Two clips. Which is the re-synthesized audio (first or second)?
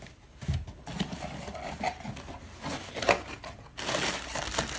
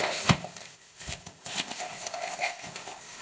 second